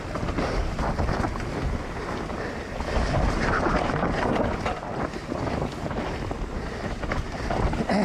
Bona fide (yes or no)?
yes